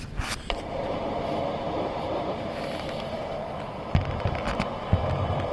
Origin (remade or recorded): recorded